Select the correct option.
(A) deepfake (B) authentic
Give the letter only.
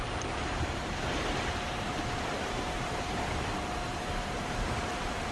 A